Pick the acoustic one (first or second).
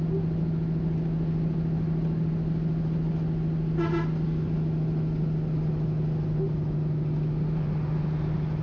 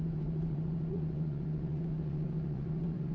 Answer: first